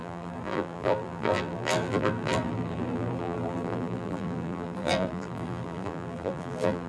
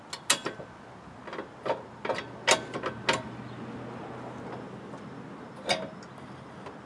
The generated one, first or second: first